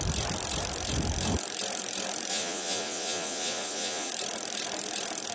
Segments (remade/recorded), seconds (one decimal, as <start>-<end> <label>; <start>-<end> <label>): 0.0-2.3 recorded; 2.3-4.1 remade; 4.1-5.3 recorded